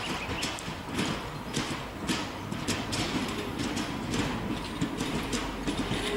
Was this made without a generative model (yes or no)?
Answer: yes